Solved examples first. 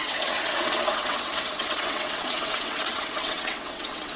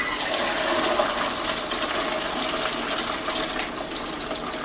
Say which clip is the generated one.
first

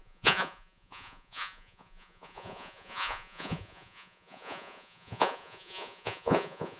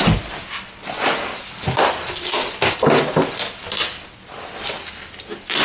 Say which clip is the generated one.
first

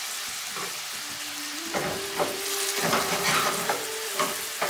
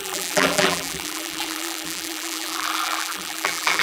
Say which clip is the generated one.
second